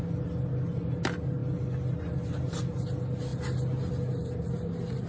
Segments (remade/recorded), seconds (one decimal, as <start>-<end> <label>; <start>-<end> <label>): 0.0-5.1 recorded